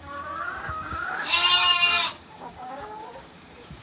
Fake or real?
fake